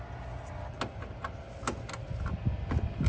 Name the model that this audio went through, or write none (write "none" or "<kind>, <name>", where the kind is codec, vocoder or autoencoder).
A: none